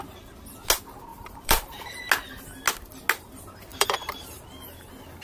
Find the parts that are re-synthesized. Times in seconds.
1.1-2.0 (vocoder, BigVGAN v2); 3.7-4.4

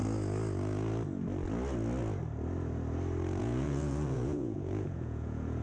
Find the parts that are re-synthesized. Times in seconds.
3.4-5.6 (vocoder, Vocos)

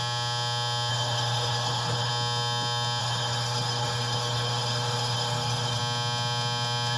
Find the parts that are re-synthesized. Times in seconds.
0.9-2.1 (codec, HILCodec); 3.0-5.8

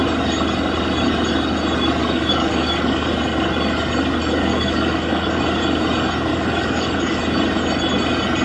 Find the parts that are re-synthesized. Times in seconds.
2.0-3.1 (codec, DAC); 4.5-5.4; 6.3-7.2